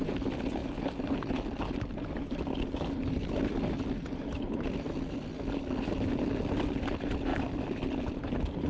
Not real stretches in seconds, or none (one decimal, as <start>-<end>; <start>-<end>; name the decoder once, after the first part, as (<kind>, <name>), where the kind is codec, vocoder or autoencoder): none